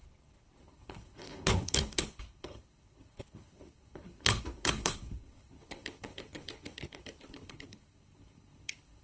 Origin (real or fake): fake